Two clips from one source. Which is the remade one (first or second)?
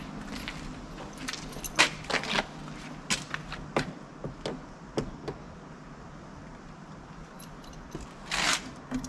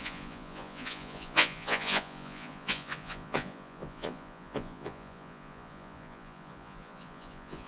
second